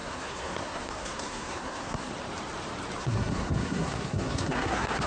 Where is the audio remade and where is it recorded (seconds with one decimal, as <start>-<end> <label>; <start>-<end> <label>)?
0.0-2.1 remade; 2.1-3.0 recorded; 3.0-5.1 remade